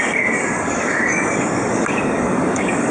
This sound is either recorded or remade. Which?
remade